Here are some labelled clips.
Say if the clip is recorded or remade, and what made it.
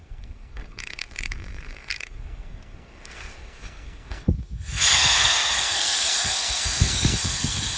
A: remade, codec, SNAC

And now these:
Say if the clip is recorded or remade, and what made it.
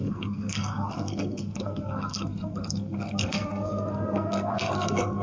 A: remade, codec, SNAC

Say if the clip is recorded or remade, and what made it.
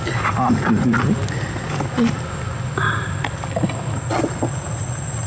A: recorded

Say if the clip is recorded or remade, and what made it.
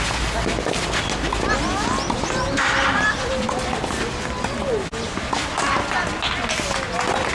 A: recorded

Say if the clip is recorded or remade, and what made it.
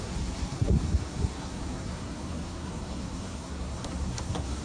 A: remade, codec, SNAC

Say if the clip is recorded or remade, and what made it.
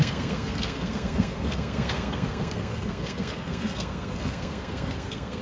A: remade, codec, SNAC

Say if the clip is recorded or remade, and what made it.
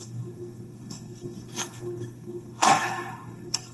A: remade, codec, SNAC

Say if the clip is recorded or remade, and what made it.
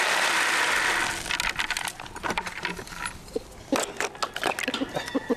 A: recorded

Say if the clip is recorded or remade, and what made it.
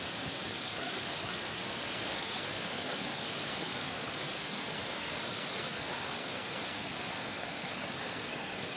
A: remade, codec, SNAC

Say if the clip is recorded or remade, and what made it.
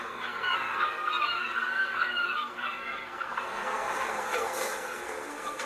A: remade, codec, SNAC